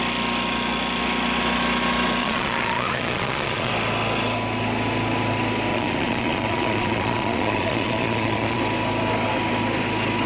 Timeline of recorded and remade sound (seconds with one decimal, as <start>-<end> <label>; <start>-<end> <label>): 0.0-2.2 recorded; 2.2-3.7 remade; 3.7-5.7 recorded; 5.7-8.6 remade; 8.6-10.3 recorded